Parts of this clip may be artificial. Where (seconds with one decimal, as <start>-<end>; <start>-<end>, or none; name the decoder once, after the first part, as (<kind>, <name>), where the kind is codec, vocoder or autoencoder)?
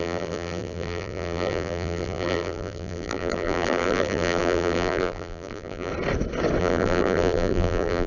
0.0-5.9 (vocoder, BigVGAN v2); 6.6-8.1